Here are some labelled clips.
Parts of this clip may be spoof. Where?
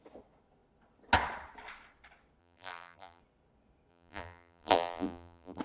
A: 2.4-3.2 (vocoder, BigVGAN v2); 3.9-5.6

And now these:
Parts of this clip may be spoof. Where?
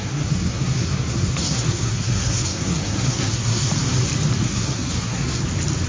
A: 0.0-3.7 (codec, SNAC); 4.4-5.4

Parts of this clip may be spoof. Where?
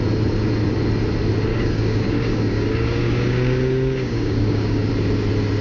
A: 1.5-4.9 (codec, DAC)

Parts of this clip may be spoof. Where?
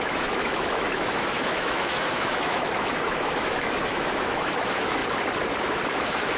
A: 0.0-5.0 (autoencoder, DAC-VAE); 5.9-6.4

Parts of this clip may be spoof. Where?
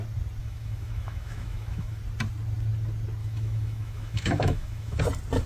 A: 0.4-2.0 (autoencoder, DAC-VAE); 3.2-5.0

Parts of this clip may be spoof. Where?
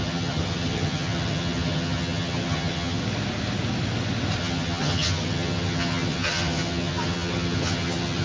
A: 0.0-3.0 (vocoder, HiFi-GAN); 4.4-8.2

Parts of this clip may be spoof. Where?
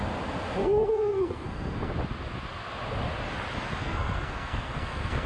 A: 0.6-1.9 (codec, SNAC); 3.8-5.3